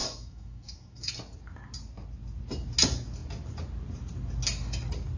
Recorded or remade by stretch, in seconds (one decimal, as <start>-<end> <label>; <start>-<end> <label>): 0.0-1.1 remade; 1.1-5.2 recorded